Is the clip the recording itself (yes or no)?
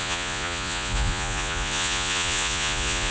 no